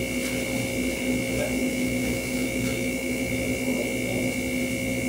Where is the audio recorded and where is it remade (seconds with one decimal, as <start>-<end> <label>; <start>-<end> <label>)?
0.0-1.6 recorded; 1.6-3.3 remade; 3.3-5.1 recorded